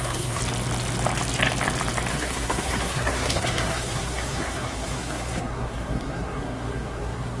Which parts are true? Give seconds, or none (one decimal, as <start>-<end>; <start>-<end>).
0.4-2.1